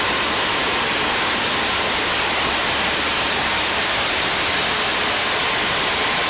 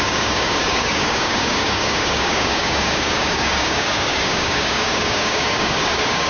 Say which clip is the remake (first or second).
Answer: second